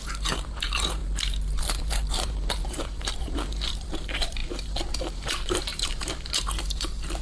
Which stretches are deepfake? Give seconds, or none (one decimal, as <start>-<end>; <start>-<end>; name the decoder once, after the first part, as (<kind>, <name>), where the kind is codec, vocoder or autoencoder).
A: 0.0-7.2 (vocoder, BigVGAN v2)